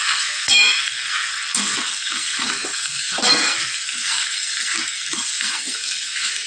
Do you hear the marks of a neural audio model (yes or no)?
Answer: yes